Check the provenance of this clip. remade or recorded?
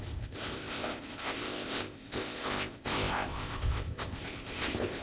remade